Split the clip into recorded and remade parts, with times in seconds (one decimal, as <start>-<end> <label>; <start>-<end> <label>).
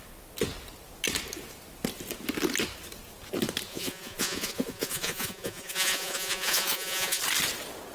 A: 0.0-3.7 recorded; 3.7-7.2 remade; 7.2-7.9 recorded